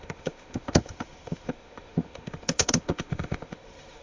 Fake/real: fake